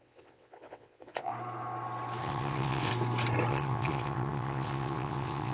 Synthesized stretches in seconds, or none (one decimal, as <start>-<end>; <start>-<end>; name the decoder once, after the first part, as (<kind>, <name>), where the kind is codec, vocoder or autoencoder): 0.0-1.3 (vocoder, WaveNeXt); 2.2-2.9; 3.5-5.5